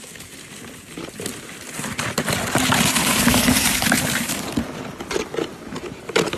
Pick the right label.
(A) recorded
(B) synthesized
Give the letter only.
A